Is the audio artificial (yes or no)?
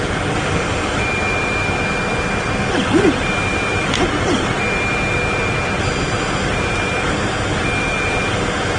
no